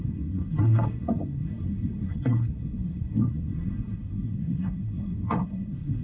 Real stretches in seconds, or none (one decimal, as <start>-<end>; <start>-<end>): none